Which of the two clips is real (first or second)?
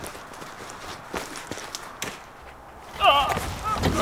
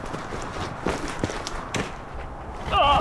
first